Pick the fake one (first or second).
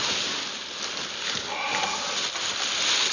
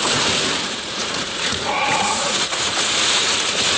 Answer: second